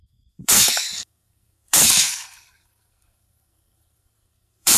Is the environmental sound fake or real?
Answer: fake